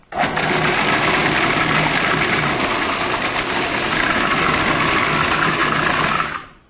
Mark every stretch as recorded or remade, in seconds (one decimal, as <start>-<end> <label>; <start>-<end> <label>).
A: 0.0-6.7 recorded